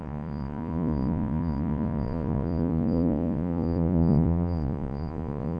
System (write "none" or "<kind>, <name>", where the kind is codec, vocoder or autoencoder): vocoder, Vocos